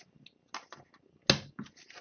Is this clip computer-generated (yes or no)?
no